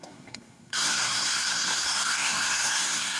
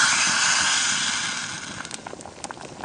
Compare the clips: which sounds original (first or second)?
second